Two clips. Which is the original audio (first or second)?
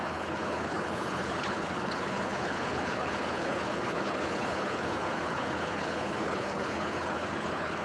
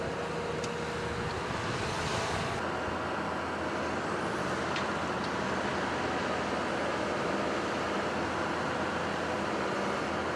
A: second